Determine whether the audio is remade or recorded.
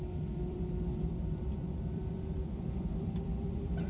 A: remade